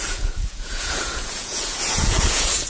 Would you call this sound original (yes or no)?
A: no